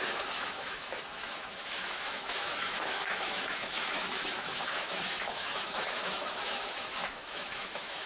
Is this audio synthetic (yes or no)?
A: yes